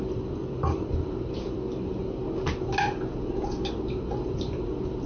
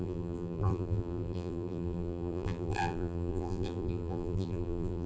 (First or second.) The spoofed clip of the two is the second